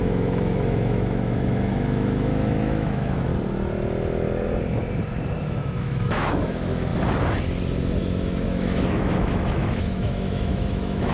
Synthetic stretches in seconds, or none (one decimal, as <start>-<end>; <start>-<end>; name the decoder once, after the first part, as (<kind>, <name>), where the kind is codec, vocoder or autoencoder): 0.0-3.3 (autoencoder, DAC-VAE); 5.4-6.9; 8.0-11.1